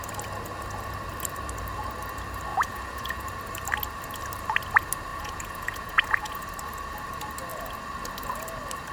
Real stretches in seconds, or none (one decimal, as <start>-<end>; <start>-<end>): 0.0-2.5; 3.2-5.1; 6.4-8.9